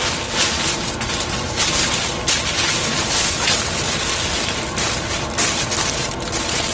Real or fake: real